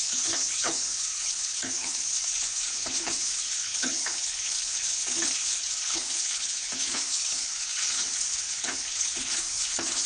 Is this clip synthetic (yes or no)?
yes